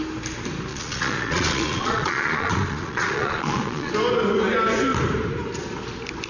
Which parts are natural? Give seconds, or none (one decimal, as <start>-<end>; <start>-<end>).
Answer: 0.0-0.7; 3.9-6.3